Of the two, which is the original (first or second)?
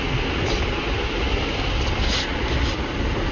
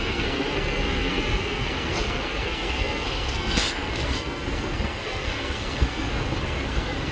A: first